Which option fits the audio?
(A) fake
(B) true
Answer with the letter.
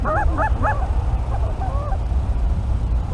A